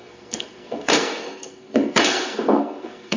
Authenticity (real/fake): fake